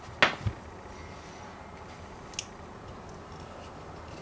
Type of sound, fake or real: real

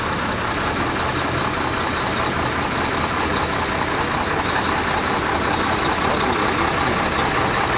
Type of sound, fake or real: real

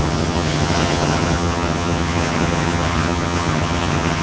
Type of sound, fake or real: fake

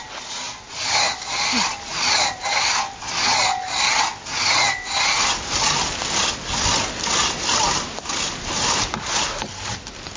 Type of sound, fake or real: real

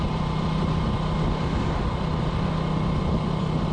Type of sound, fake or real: real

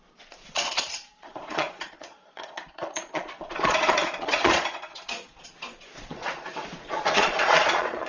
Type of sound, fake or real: fake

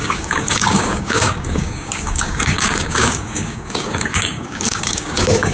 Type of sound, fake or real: fake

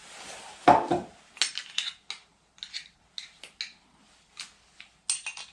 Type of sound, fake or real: real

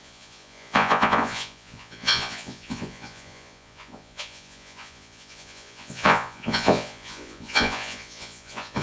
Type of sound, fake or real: fake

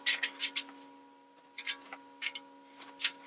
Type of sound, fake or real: real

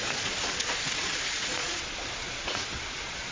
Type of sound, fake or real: fake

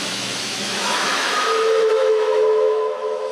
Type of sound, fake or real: fake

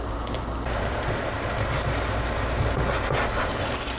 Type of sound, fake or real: real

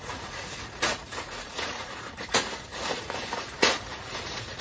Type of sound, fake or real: fake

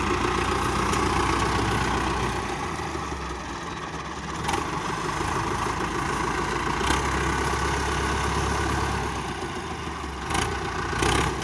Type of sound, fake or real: real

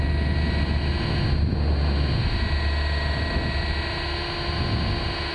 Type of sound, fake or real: real